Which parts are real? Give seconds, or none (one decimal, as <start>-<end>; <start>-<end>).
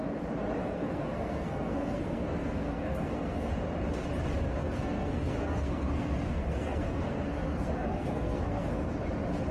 0.0-0.6; 3.5-4.6; 8.9-9.5